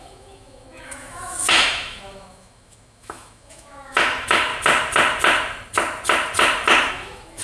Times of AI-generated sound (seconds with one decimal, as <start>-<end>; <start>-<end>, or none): 0.0-4.5; 6.9-7.4